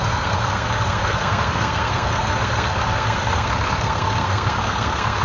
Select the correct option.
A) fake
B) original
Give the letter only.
A